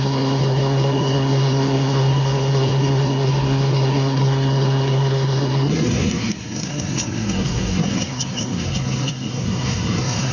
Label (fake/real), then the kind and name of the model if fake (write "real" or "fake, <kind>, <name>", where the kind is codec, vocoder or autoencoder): fake, codec, SNAC